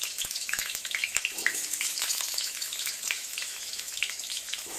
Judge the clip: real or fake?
fake